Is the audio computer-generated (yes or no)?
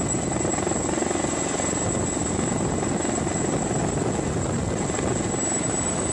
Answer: no